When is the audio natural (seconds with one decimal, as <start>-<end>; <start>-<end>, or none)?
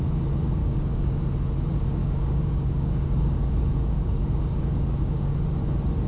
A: 0.0-0.6; 1.2-2.0; 5.3-6.1